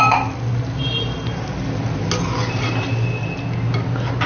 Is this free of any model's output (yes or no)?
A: yes